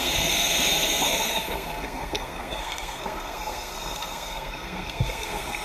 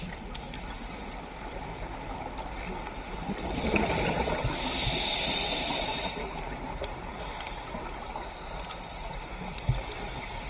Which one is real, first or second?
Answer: second